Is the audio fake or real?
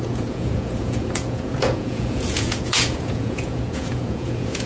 fake